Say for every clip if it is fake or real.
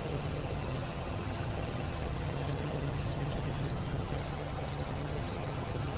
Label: fake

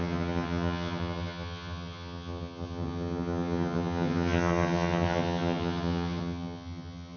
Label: fake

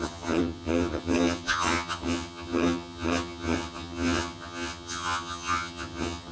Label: fake